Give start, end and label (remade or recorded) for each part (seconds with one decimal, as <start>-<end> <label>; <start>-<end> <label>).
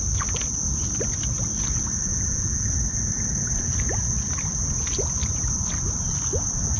0.0-2.1 recorded; 2.1-2.7 remade; 2.7-6.8 recorded